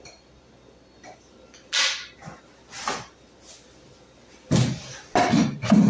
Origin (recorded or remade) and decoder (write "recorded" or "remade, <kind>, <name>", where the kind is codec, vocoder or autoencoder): recorded